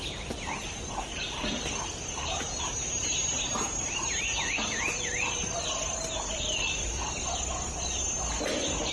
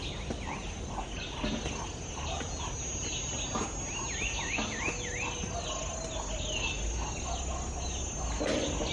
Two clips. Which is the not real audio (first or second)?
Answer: first